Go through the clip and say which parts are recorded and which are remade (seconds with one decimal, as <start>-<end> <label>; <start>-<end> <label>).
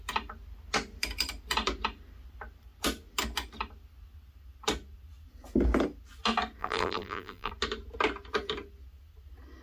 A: 0.0-6.6 recorded; 6.6-7.5 remade; 7.5-9.6 recorded